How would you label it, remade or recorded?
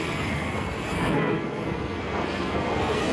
remade